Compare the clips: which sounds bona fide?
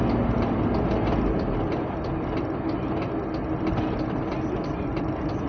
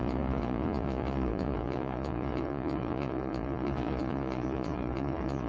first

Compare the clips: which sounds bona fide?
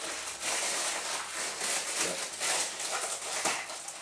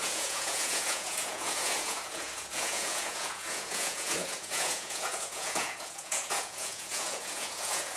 first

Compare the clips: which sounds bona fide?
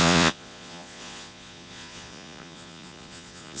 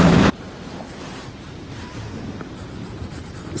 second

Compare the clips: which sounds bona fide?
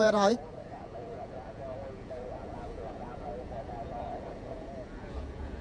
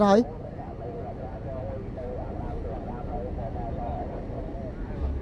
second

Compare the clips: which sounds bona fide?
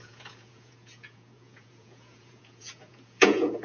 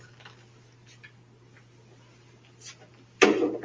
second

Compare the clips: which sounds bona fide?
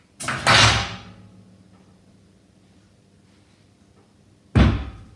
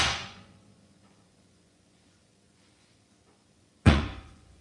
first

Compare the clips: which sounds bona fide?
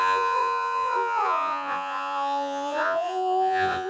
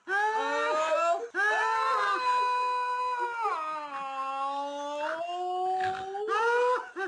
second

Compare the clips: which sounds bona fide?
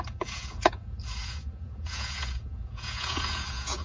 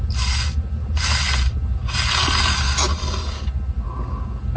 second